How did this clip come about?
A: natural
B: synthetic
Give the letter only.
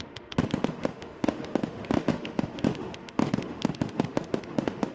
B